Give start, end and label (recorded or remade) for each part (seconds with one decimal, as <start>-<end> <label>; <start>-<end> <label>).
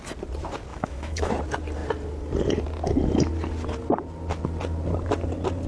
0.0-0.7 recorded; 0.7-1.3 remade; 1.3-5.7 recorded